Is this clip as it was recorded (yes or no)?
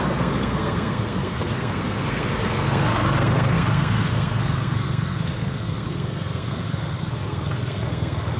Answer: no